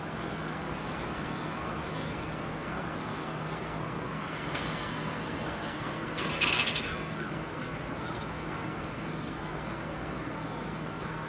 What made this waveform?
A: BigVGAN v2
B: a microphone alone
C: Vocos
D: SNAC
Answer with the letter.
D